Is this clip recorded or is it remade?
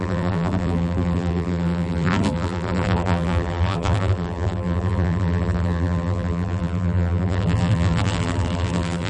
remade